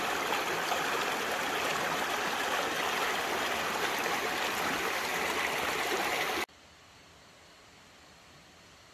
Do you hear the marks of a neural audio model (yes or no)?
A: no